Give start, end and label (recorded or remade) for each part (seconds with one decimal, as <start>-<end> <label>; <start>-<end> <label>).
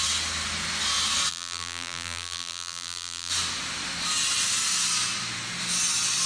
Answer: 0.0-1.3 recorded; 1.3-3.3 remade; 3.3-6.3 recorded